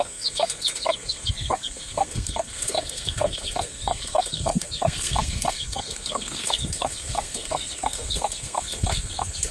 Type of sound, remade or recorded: remade